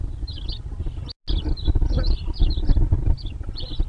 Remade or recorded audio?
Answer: recorded